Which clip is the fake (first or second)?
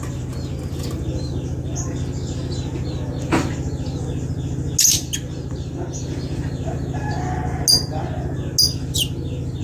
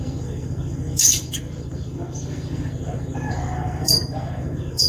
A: second